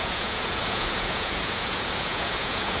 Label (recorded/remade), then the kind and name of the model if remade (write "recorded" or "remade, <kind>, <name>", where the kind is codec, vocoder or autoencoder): remade, vocoder, Vocos